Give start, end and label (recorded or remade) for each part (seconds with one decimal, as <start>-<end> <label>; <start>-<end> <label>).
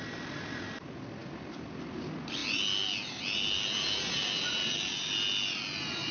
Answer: 0.0-6.1 recorded